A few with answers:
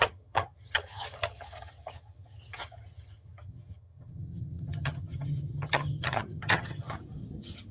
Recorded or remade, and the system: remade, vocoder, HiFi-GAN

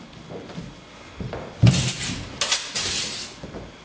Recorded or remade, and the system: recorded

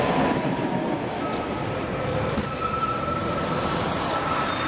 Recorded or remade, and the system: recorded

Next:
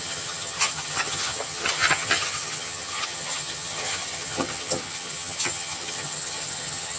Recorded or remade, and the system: remade, vocoder, HiFi-GAN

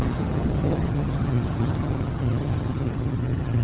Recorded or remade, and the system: remade, vocoder, HiFi-GAN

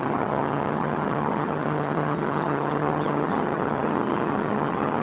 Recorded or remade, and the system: remade, vocoder, HiFi-GAN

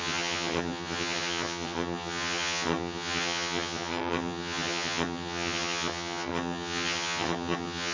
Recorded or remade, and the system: remade, vocoder, HiFi-GAN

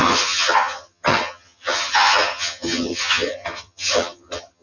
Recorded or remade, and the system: remade, vocoder, HiFi-GAN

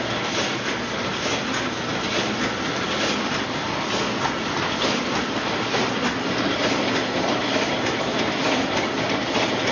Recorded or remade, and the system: recorded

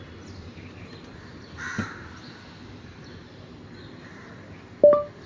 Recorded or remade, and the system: recorded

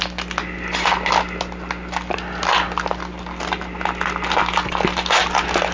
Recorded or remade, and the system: recorded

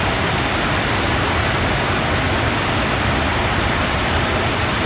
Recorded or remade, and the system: recorded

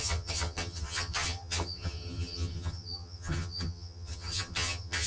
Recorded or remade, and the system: remade, vocoder, HiFi-GAN